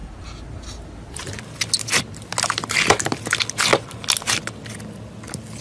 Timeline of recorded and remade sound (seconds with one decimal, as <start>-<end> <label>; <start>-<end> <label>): 0.0-5.6 recorded